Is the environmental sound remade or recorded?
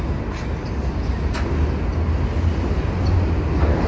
recorded